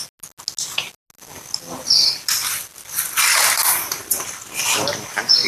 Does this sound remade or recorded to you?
recorded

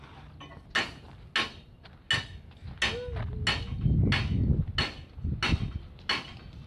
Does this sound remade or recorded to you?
recorded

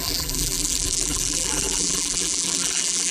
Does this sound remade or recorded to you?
remade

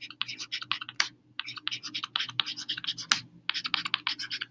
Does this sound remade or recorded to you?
recorded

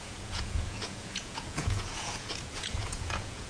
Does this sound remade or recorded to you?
remade